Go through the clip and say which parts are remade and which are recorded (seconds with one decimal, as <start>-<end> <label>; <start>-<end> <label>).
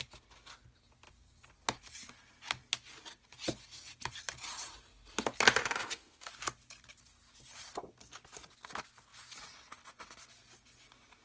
0.0-5.6 recorded; 5.6-6.3 remade; 6.3-11.2 recorded